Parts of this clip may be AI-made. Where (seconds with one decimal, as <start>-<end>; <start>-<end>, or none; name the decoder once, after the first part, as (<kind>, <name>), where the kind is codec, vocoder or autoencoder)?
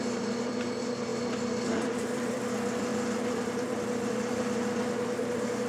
0.0-1.1 (vocoder, BigVGAN v2); 1.6-5.7